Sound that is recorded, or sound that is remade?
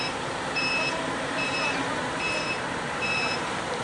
remade